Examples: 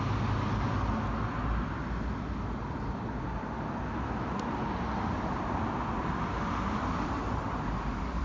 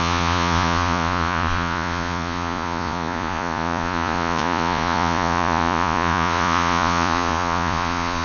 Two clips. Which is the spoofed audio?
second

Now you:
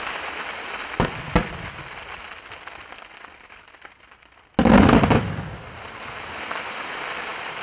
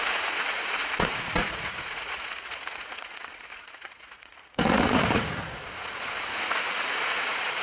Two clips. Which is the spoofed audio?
second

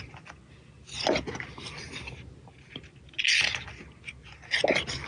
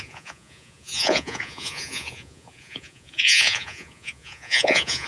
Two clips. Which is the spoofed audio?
second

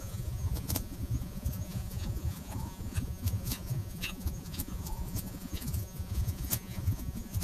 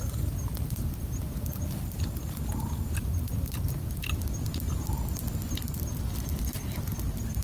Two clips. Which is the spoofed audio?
first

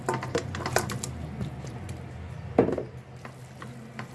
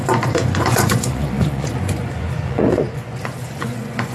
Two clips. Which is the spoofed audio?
second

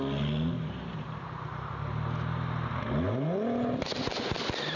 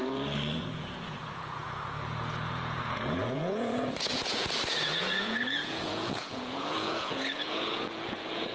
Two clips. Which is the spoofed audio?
second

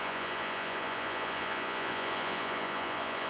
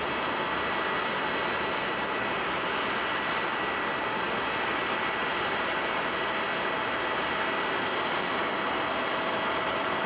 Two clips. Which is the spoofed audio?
first